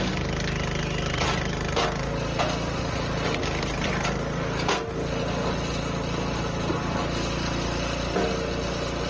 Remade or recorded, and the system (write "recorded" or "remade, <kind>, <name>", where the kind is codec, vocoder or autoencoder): recorded